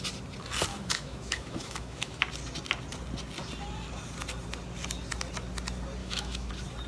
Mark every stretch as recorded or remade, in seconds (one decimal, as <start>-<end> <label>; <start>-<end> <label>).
0.0-0.7 recorded; 0.7-2.2 remade; 2.2-6.0 recorded; 6.0-6.5 remade; 6.5-6.9 recorded